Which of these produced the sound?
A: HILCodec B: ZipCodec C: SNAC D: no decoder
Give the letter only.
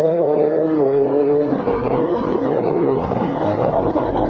C